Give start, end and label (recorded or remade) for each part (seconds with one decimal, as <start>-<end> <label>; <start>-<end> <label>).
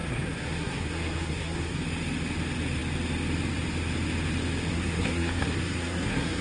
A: 0.0-1.8 remade; 1.8-4.7 recorded; 4.7-6.4 remade